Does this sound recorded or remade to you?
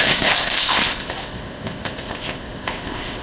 remade